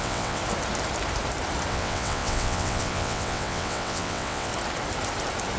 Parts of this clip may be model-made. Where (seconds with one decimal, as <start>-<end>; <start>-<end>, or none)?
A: 0.0-0.4; 1.7-4.5